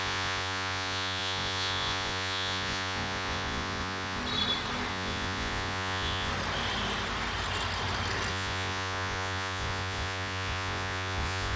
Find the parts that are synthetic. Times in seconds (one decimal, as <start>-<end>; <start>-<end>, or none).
0.0-4.2; 4.9-6.3; 8.3-11.6